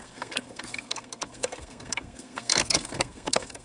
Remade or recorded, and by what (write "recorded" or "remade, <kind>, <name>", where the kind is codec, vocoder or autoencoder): remade, codec, SNAC